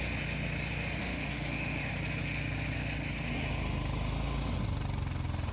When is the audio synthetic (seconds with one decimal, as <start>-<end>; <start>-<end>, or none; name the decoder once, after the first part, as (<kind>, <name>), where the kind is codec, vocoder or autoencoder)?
1.0-1.9 (autoencoder, DAC-VAE)